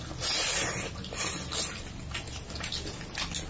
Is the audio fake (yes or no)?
no